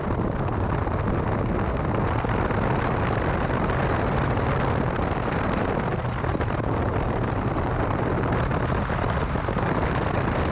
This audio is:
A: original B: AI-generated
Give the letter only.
A